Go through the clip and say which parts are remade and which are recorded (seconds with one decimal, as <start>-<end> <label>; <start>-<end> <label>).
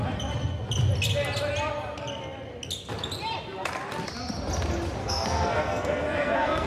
0.0-5.0 recorded; 5.0-6.7 remade